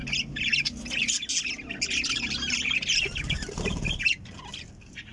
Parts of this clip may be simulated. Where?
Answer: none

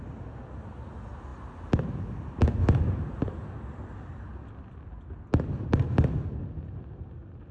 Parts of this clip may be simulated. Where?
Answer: none

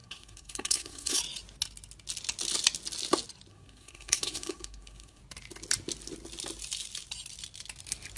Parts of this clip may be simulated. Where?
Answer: 0.0-1.2 (codec, SNAC); 3.5-5.2

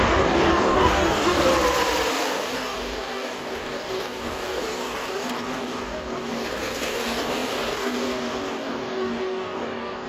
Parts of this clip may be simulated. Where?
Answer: 0.0-1.5 (codec, DAC); 2.1-10.1

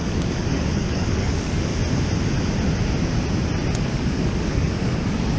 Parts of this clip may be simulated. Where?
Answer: 0.0-1.7 (codec, DAC); 3.8-5.4

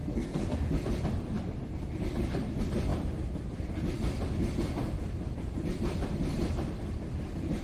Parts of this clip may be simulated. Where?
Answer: 0.0-0.7 (codec, SNAC)

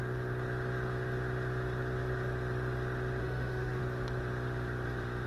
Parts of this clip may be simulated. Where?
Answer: 3.2-3.8 (autoencoder, DAC-VAE)